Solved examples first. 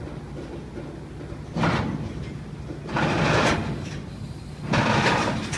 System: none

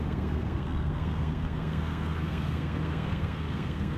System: codec, SNAC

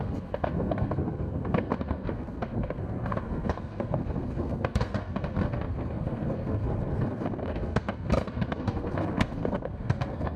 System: codec, SNAC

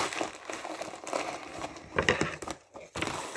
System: none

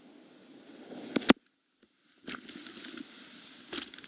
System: none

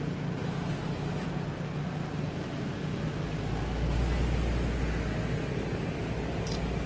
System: none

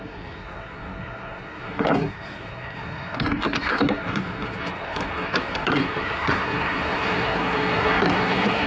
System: codec, SNAC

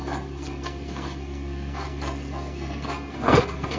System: codec, SNAC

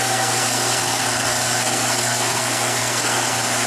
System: codec, SNAC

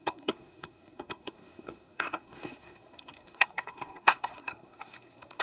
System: codec, SNAC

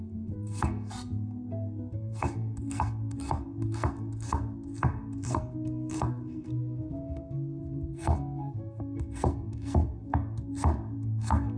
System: codec, SNAC